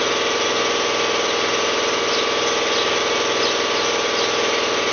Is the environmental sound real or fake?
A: real